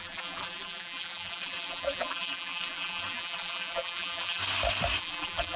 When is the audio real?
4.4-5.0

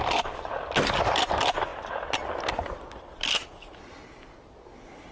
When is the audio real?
0.0-5.1

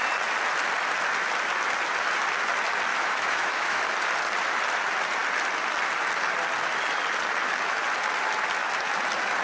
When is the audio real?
0.0-2.9; 3.8-9.4

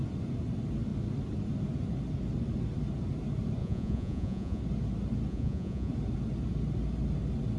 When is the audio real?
0.0-3.6; 4.6-5.3; 5.9-7.6

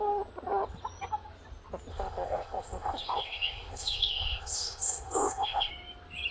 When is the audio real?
0.0-1.9; 5.7-6.3